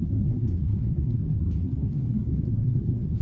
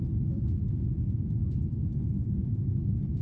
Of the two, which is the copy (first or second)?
first